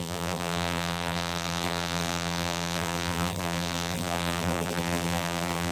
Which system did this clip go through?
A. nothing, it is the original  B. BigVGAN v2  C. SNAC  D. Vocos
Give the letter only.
B